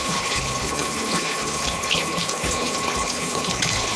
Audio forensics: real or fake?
fake